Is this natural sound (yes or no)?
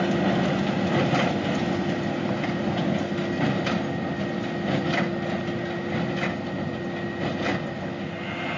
yes